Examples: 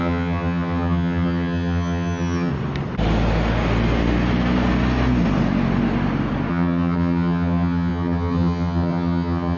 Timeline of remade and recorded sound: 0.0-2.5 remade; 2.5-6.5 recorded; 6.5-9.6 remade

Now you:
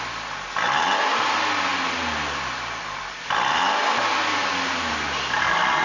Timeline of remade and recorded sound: 0.0-5.8 recorded

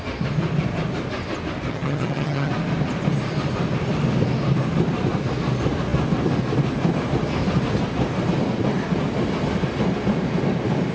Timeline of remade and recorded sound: 0.0-1.7 recorded; 1.7-2.5 remade; 2.5-10.9 recorded

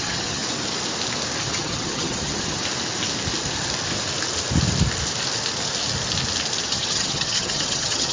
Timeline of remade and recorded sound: 0.0-0.4 remade; 0.4-1.4 recorded; 1.4-2.6 remade; 2.6-6.7 recorded; 6.7-8.1 remade

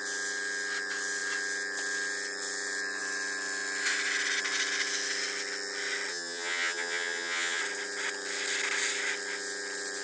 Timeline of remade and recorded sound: 0.0-6.1 recorded; 6.1-7.6 remade; 7.6-10.0 recorded